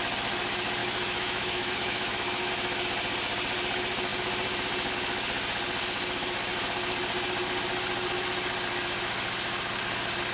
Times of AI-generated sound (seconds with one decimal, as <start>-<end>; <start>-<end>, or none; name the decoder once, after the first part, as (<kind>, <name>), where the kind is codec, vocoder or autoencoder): 0.8-2.5 (autoencoder, DAC-VAE)